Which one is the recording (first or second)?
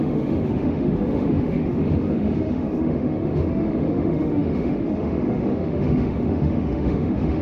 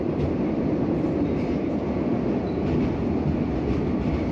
second